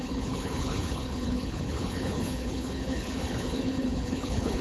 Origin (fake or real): fake